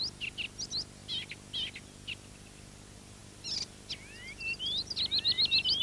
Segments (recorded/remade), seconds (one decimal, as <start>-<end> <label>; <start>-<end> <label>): 0.0-5.8 recorded